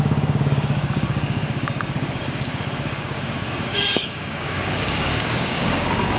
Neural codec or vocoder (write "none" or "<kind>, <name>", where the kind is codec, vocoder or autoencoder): codec, DAC